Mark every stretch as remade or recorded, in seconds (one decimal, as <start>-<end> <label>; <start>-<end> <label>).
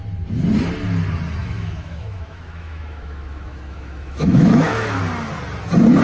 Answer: 0.0-1.4 recorded; 1.4-5.0 remade; 5.0-6.0 recorded